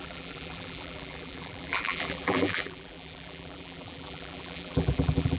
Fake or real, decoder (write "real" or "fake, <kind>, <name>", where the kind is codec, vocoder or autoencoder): fake, vocoder, BigVGAN v2